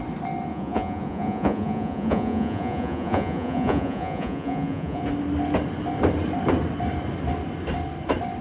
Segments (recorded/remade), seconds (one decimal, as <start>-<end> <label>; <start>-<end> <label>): 0.0-0.5 recorded; 0.5-5.0 remade; 5.0-8.4 recorded